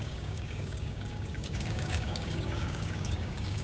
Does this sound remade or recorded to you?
remade